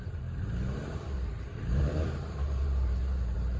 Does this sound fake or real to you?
fake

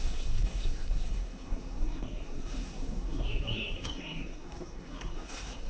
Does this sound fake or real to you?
fake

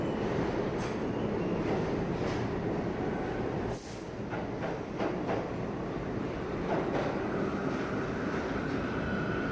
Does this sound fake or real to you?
real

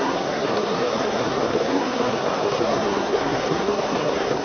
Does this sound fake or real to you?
fake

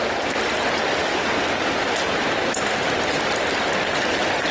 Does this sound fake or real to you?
real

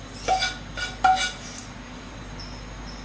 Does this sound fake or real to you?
real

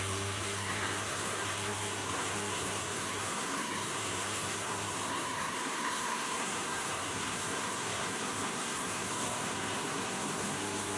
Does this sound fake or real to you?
fake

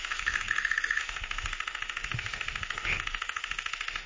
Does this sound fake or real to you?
fake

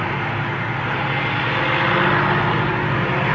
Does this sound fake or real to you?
real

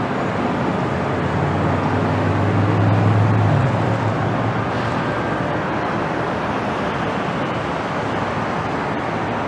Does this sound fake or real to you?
real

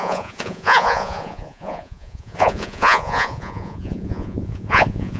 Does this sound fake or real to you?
fake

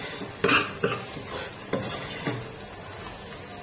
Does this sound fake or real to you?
real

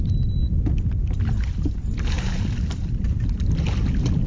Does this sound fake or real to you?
real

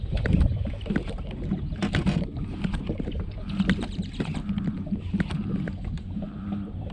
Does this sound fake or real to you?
fake